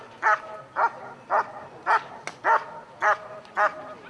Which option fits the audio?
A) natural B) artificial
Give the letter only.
A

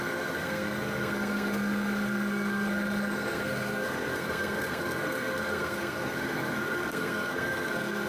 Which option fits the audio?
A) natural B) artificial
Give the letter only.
B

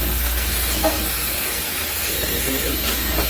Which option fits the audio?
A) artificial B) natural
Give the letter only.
A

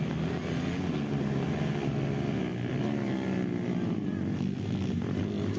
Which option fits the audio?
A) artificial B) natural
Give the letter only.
B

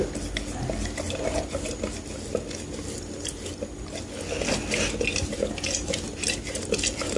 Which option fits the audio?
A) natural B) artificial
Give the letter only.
A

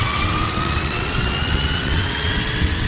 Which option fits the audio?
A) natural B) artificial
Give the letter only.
B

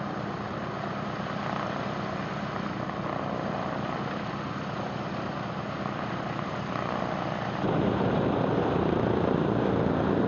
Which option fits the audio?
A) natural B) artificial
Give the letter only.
A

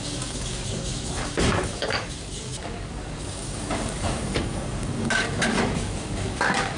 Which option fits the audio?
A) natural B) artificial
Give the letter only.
B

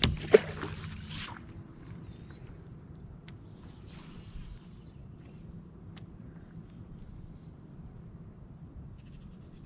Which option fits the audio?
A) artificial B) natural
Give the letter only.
B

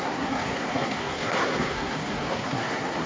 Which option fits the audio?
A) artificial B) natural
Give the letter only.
A